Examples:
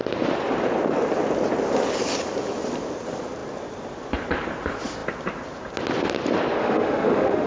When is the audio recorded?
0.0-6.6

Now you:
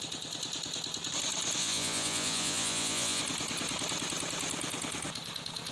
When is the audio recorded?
0.0-1.6; 3.2-5.7

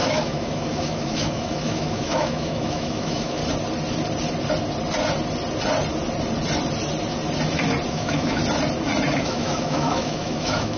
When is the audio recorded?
3.4-7.9; 8.4-9.2

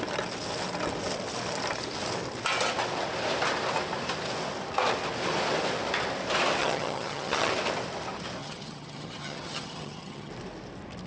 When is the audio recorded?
0.0-6.6; 7.5-8.4; 10.3-11.1

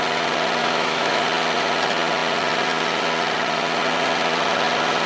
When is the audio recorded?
0.0-0.6; 1.2-5.1